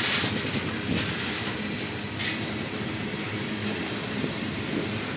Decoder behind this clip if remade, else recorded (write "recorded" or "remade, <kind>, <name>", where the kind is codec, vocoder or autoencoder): recorded